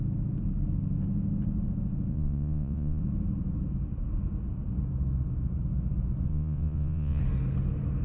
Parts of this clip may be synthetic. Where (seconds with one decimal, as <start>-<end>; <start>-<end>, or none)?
2.1-3.0; 6.3-7.2